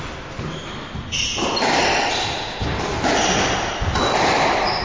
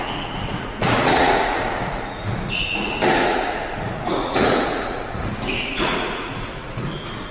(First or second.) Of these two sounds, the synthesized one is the second